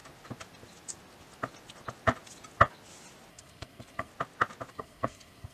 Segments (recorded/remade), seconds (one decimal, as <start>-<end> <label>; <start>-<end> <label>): 0.0-3.3 recorded; 3.3-4.1 remade; 4.1-4.7 recorded; 4.7-5.5 remade